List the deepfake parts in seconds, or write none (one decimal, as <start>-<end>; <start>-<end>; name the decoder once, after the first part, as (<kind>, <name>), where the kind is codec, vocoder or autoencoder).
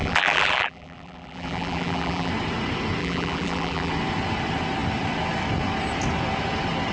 0.0-2.3 (vocoder, BigVGAN v2); 3.0-3.9